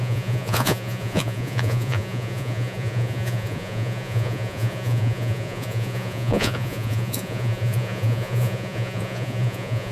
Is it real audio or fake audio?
fake